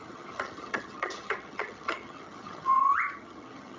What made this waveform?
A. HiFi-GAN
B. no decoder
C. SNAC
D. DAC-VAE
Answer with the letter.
A